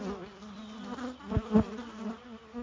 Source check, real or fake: real